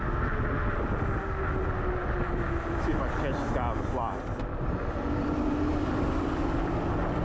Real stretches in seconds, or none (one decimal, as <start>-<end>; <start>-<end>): 0.0-2.0; 6.3-7.2